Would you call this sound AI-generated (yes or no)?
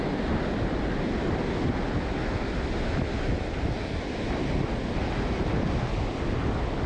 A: no